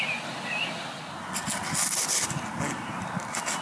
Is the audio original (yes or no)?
yes